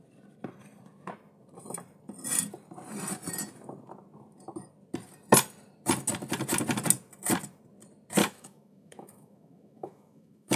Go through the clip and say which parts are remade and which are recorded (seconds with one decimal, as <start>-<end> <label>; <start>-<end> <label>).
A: 0.0-8.2 recorded; 8.2-10.6 remade